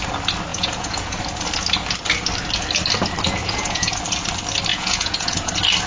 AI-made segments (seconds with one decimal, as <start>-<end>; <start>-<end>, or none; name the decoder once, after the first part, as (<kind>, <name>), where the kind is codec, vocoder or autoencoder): 0.5-1.2 (vocoder, Vocos); 3.4-3.9; 4.7-5.5